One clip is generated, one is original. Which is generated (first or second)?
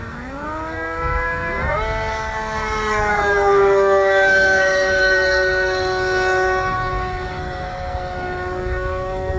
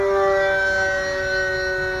first